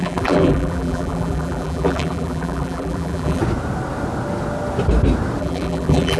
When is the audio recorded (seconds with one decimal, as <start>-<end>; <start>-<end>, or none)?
3.4-5.4